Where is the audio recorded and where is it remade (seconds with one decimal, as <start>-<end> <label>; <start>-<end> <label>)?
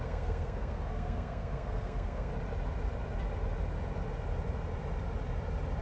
0.0-2.3 remade; 2.3-5.8 recorded